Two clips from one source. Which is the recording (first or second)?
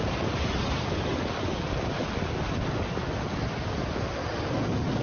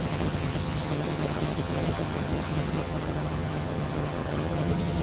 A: first